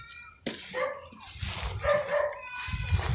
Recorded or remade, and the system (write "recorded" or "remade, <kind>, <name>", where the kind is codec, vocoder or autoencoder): recorded